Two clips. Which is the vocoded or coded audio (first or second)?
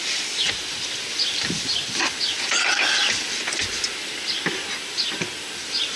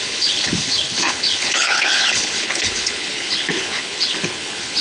second